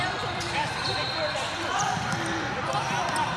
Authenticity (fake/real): fake